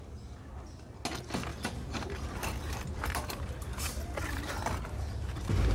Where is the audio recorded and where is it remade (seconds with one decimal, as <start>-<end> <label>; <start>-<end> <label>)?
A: 0.0-1.5 recorded; 1.5-4.7 remade; 4.7-5.7 recorded